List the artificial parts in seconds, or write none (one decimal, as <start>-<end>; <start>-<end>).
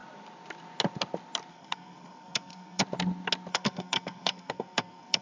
1.5-2.8; 3.5-5.2